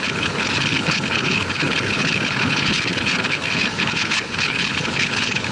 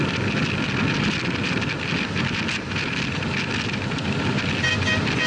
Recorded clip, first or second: second